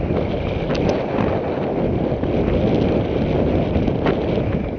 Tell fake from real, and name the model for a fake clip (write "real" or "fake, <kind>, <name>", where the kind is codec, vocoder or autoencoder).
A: real